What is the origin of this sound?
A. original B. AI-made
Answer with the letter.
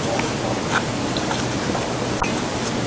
A